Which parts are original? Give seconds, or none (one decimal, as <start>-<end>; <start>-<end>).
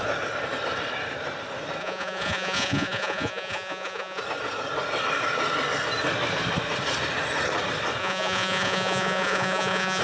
0.0-1.8; 4.2-8.0